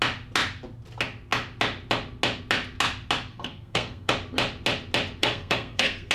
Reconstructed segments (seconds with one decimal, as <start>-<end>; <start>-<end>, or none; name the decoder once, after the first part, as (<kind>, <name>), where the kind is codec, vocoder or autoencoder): 3.3-4.1 (codec, SNAC); 5.2-6.1